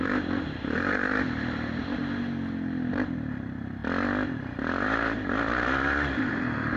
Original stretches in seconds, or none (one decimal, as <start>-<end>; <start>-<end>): 2.0-2.9; 3.8-4.4